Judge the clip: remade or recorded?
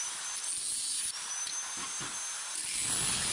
recorded